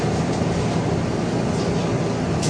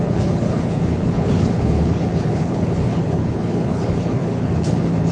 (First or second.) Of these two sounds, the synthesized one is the second